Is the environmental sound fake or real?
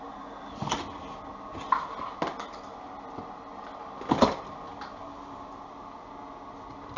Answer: real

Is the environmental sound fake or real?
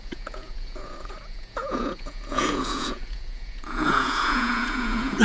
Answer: fake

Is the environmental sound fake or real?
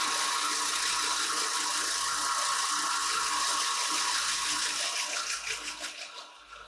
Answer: real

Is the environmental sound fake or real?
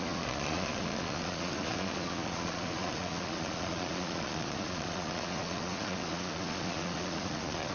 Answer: fake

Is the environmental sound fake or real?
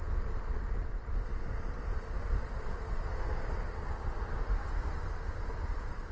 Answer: real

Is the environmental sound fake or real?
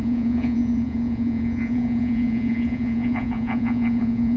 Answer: fake